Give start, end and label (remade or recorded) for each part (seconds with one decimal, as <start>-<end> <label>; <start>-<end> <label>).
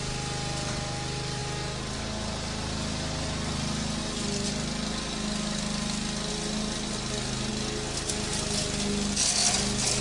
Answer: 0.0-10.0 recorded